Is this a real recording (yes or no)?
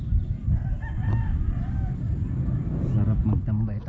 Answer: yes